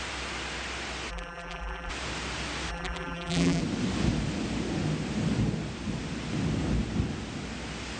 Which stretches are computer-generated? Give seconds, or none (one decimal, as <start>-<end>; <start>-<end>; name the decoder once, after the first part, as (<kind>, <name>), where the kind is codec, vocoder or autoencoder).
1.1-1.9 (vocoder, BigVGAN v2); 2.7-3.6